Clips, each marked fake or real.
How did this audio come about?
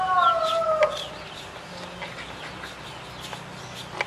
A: real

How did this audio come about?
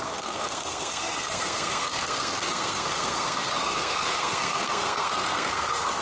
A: fake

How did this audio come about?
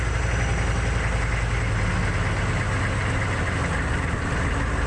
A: real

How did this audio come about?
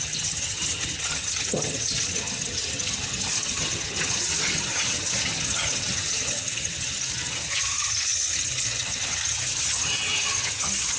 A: fake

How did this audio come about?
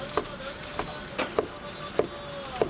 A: real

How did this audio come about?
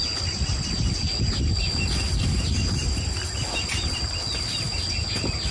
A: real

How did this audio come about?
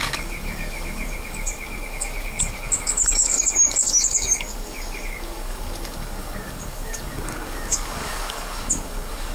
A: fake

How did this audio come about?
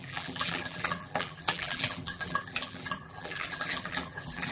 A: fake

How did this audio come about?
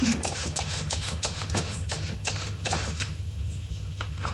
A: fake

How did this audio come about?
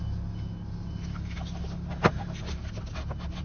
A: real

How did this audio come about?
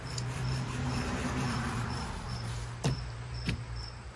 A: fake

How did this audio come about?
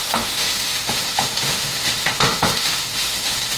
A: fake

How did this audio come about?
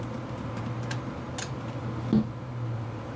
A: real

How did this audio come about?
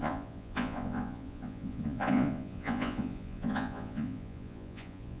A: fake